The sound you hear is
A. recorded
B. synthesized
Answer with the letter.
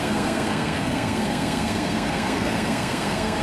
B